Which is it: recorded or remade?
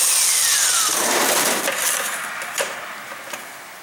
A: recorded